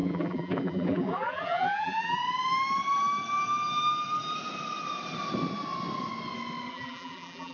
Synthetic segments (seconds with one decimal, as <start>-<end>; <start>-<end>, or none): 0.0-2.2; 6.7-7.5